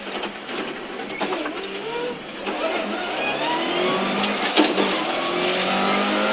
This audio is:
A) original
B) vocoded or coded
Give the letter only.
A